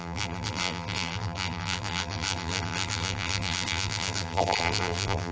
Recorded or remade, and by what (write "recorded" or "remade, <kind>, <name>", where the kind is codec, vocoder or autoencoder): remade, vocoder, BigVGAN v2